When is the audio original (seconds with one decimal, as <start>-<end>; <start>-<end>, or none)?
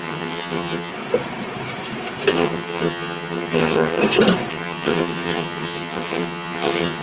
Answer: 0.9-2.3; 4.0-4.5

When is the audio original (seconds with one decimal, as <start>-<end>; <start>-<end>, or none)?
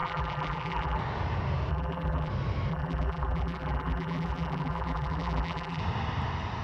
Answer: 1.0-1.7; 2.3-2.7; 5.8-6.6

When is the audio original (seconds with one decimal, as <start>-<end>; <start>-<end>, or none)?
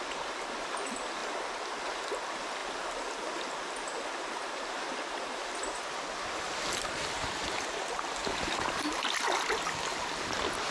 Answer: 0.0-8.2; 8.9-10.7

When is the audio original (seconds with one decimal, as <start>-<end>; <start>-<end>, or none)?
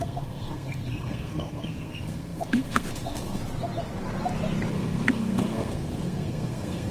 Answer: 3.4-4.7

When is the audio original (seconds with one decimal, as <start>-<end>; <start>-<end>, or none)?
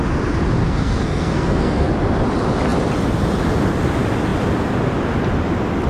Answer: 0.0-0.6; 1.9-5.9